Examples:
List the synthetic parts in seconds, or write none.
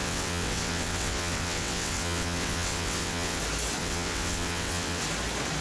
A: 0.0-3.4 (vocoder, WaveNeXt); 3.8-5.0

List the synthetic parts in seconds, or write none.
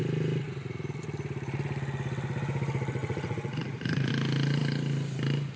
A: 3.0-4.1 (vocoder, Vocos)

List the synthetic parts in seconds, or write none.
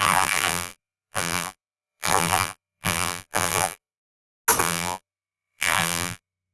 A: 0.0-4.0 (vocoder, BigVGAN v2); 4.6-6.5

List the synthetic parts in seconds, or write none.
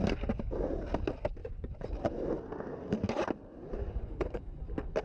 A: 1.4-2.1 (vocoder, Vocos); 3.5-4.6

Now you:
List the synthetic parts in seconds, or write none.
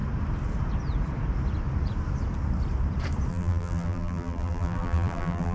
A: 3.3-5.5 (vocoder, BigVGAN v2)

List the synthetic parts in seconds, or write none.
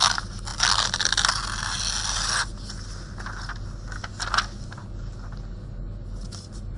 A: none